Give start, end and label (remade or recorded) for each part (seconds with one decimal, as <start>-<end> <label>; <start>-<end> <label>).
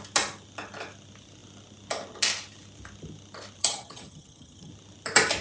0.0-3.6 recorded; 3.6-4.7 remade; 4.7-5.4 recorded